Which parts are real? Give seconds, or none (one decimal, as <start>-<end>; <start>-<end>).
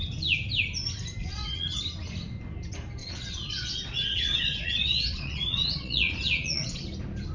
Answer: 0.0-1.2; 1.8-3.0; 6.8-7.3